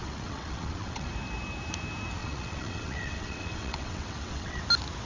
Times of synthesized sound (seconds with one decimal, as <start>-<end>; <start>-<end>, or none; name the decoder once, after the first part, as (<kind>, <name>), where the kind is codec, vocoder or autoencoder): 0.0-1.1 (vocoder, WaveNeXt); 2.2-4.6

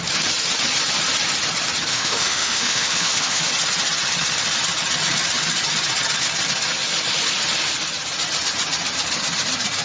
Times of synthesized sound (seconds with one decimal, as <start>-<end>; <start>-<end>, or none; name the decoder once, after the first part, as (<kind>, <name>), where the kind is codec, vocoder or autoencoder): 1.9-3.5 (autoencoder, DAC-VAE)

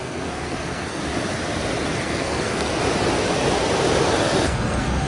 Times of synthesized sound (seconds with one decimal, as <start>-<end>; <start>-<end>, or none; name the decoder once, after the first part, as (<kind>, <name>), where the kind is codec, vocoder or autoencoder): 0.0-1.0 (codec, SNAC); 1.9-2.8; 4.2-5.1

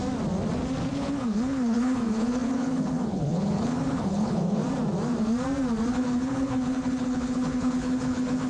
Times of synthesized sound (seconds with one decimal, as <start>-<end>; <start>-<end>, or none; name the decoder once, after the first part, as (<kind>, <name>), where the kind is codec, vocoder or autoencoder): 0.9-4.6 (codec, HILCodec); 5.9-8.5

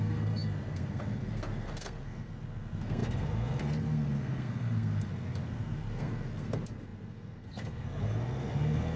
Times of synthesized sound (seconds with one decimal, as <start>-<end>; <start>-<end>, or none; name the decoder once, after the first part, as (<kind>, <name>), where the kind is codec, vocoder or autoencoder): 0.0-9.0 (codec, SNAC)

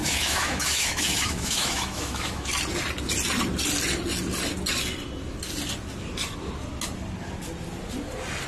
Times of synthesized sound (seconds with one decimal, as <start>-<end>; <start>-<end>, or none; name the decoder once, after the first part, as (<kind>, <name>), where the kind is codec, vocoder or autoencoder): 0.0-2.5 (autoencoder, DAC-VAE)

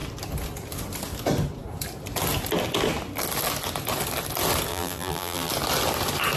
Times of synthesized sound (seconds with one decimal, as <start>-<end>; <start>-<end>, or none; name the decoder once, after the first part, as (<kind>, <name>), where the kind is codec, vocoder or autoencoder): 4.7-5.5 (vocoder, BigVGAN v2)

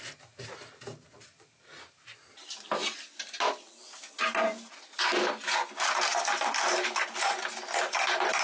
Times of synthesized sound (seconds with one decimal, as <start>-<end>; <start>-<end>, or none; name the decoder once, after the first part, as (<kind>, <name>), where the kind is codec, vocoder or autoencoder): none